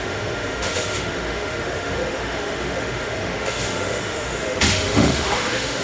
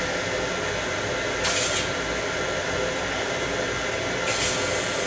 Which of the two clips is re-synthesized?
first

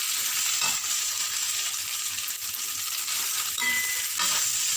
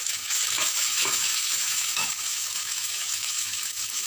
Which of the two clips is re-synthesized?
second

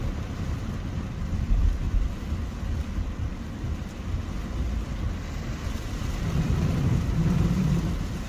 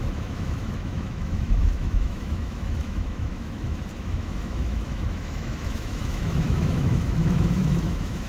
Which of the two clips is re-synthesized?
second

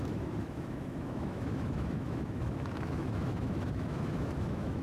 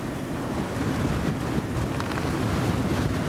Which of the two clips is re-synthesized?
first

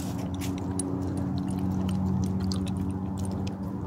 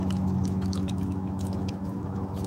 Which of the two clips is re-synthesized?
second